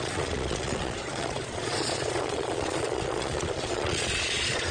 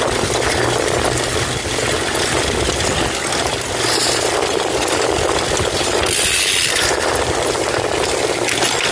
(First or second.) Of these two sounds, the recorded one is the second